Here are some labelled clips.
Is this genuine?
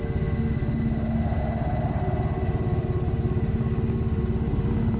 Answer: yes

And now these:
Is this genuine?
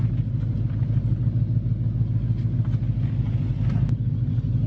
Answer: yes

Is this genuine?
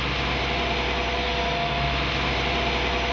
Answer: yes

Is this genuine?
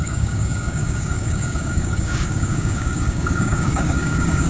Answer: no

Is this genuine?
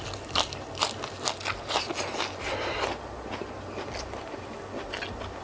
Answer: yes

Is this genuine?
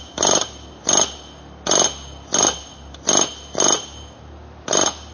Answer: yes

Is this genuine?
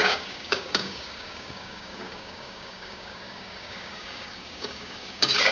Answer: no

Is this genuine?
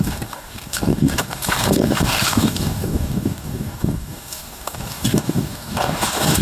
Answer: no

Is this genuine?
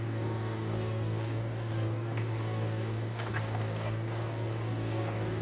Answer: no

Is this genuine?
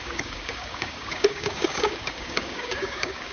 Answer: no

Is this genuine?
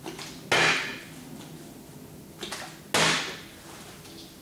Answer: yes